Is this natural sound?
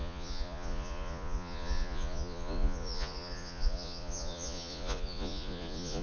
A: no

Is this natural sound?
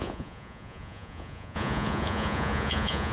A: no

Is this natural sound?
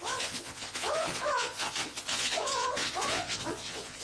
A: no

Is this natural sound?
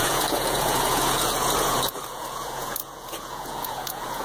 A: no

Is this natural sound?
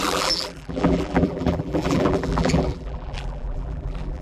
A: no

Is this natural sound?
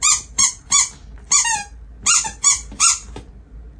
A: yes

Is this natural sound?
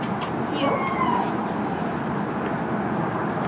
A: yes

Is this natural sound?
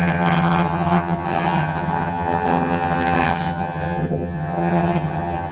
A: no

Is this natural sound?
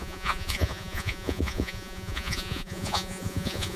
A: no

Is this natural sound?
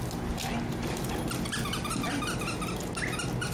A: yes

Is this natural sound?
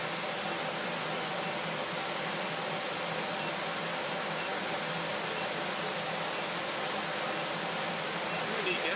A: yes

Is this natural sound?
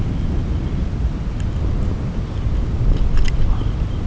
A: yes